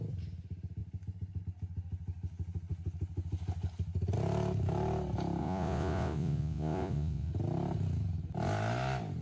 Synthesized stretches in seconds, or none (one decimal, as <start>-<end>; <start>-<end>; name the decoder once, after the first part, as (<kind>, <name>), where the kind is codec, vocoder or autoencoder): 5.4-7.3 (vocoder, Vocos)